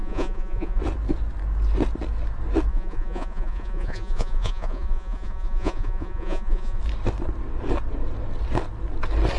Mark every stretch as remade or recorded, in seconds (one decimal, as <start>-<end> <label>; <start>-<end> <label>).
0.0-0.8 remade; 0.8-2.7 recorded; 2.7-6.8 remade; 6.8-9.4 recorded